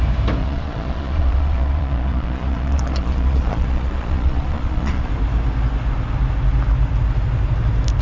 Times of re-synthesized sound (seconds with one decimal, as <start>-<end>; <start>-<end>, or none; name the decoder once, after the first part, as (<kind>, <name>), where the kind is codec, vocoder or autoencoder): 0.4-5.1 (vocoder, Vocos)